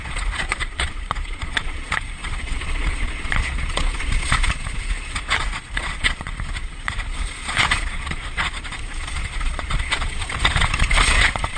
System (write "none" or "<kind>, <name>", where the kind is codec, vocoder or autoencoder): vocoder, Vocos